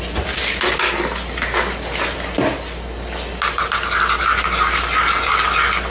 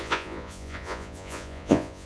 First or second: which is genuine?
first